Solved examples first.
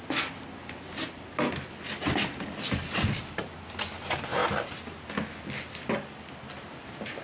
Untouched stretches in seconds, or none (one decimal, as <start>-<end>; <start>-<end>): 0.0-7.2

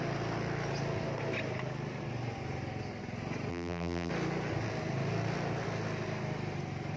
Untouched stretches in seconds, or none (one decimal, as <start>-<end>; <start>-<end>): 0.0-3.5; 4.1-7.0

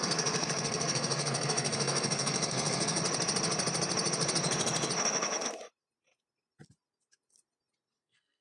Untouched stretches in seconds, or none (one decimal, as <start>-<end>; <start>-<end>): 3.0-8.0